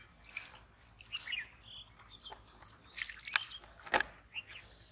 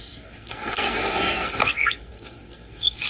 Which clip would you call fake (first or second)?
second